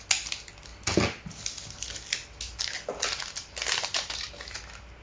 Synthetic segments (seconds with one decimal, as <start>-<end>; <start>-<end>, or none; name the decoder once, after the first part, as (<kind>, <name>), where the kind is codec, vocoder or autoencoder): none